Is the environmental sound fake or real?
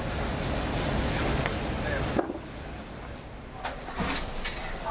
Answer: real